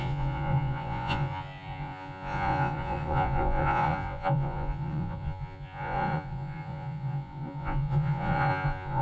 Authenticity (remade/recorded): remade